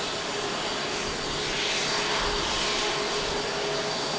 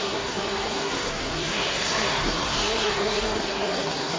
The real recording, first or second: first